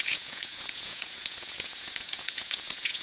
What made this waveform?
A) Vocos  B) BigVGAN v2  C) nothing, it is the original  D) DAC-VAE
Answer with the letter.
A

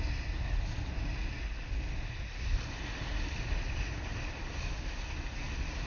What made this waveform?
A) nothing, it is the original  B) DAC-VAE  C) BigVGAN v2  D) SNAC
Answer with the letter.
A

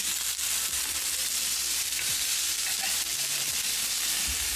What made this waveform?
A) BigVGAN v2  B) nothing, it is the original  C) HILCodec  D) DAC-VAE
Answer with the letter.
A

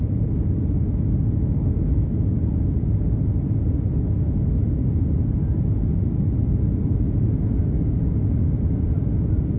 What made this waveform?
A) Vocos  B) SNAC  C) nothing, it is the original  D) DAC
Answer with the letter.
C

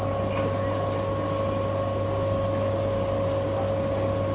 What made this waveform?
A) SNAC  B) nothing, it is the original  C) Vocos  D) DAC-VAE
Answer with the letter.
B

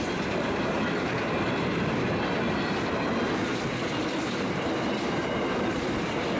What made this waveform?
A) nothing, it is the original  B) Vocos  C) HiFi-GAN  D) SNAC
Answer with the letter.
A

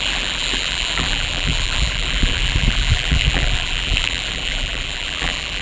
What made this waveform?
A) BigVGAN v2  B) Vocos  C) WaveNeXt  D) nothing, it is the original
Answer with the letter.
A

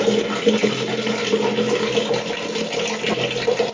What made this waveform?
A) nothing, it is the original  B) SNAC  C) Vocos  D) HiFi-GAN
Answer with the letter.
A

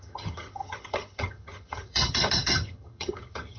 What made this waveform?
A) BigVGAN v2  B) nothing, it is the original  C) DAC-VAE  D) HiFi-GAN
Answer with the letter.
D